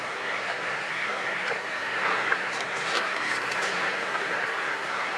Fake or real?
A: fake